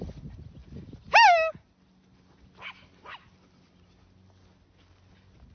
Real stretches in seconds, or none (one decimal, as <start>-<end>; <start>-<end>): 0.0-5.5